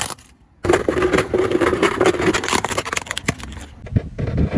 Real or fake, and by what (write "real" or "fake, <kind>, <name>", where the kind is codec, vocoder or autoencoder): real